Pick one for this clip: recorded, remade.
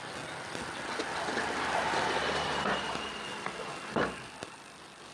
recorded